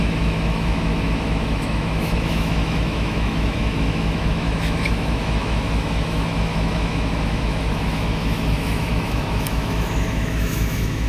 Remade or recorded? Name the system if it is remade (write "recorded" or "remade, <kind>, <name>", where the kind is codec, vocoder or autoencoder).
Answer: remade, autoencoder, DAC-VAE